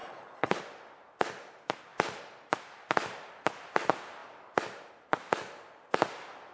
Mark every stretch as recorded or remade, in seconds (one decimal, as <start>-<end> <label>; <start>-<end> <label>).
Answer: 0.0-0.6 remade; 0.6-6.5 recorded